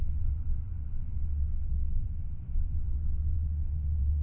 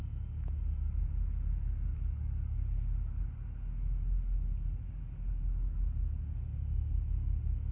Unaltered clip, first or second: second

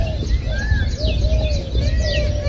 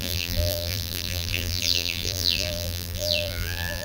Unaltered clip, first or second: first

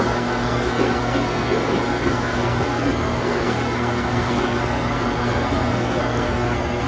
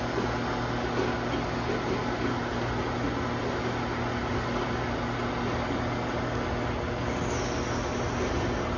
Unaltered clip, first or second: second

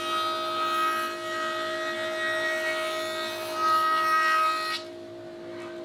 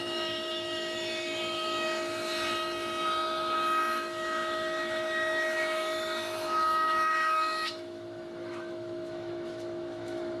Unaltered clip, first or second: first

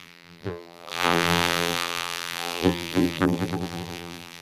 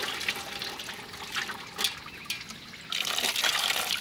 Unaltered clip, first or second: second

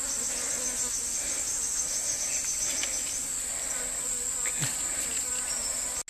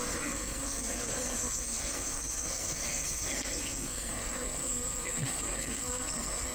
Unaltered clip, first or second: first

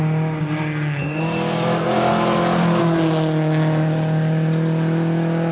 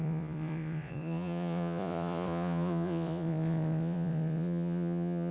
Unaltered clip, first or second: first